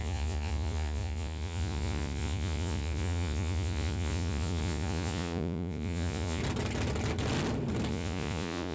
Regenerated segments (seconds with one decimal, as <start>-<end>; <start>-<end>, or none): 0.0-6.4; 7.9-8.7